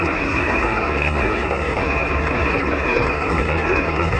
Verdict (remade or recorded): remade